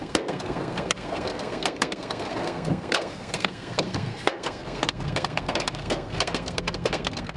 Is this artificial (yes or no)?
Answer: yes